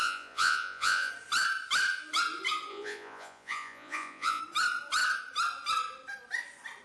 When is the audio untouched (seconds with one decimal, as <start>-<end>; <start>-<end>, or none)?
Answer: 1.1-2.7; 4.4-6.8